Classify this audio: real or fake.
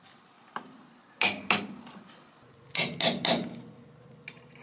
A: real